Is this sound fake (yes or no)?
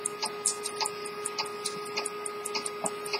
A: no